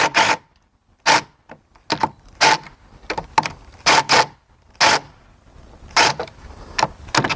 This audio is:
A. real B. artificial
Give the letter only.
A